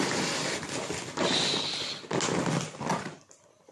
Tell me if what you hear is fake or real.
real